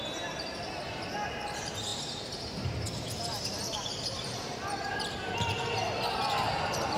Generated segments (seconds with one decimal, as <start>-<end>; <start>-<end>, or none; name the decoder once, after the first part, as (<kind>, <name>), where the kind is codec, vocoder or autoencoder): none